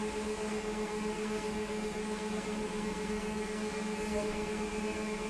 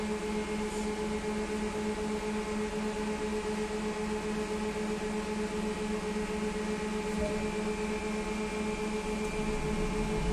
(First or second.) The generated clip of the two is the first